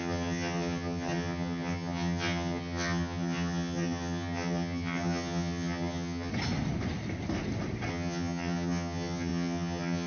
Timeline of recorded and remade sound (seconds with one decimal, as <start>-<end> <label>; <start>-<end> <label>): 0.0-6.3 remade; 6.3-7.9 recorded; 7.9-10.1 remade